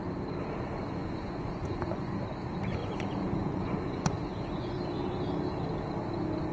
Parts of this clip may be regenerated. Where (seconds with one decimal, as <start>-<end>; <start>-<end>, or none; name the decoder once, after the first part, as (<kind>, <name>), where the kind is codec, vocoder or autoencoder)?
1.0-2.2 (vocoder, Vocos); 2.8-4.8